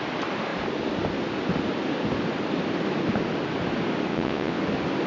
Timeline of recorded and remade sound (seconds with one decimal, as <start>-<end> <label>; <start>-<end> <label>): 0.0-4.1 recorded; 4.1-4.6 remade; 4.6-5.1 recorded